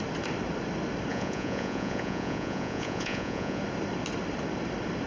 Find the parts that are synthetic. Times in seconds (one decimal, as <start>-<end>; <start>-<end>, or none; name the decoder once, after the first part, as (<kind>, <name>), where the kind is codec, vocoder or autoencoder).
1.1-3.6 (vocoder, Vocos)